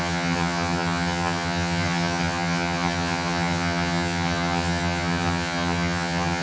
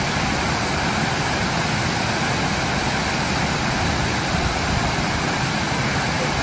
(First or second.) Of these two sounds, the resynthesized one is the first